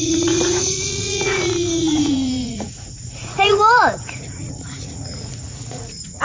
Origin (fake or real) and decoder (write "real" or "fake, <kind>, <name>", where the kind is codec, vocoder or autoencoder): fake, vocoder, Vocos